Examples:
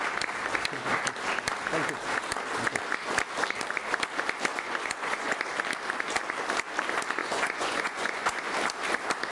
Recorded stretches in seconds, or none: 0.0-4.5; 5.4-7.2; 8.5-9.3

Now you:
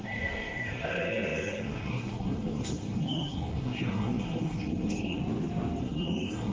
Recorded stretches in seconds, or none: 5.2-5.8

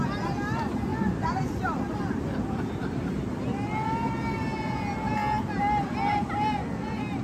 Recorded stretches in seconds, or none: 0.0-0.9; 2.2-7.2

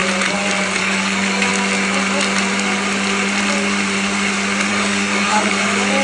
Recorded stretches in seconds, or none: 0.0-0.8; 1.5-4.7